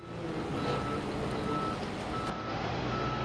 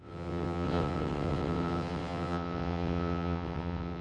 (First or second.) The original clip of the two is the first